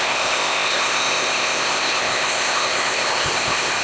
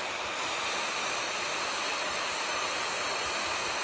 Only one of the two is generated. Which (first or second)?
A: first